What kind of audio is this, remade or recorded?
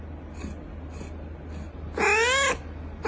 recorded